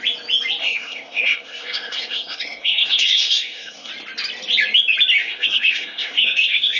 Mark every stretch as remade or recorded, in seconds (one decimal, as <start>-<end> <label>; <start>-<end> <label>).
0.0-0.6 recorded; 0.6-3.9 remade; 3.9-5.2 recorded; 5.2-6.8 remade